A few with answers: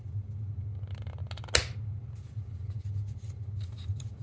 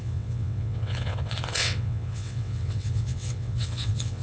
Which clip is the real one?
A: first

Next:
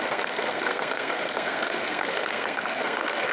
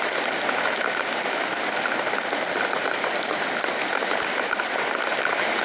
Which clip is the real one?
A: second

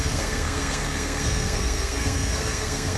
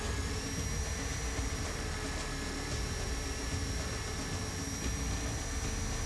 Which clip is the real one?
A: second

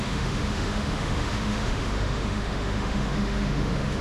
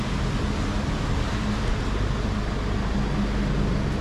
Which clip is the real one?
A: second